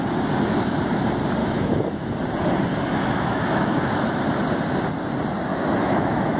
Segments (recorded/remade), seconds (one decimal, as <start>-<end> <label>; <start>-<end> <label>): 0.0-1.4 recorded; 1.4-2.1 remade; 2.1-2.7 recorded; 2.7-4.2 remade; 4.2-5.5 recorded; 5.5-6.4 remade